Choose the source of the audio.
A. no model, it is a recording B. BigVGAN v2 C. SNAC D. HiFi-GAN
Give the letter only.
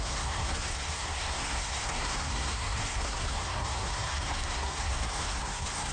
C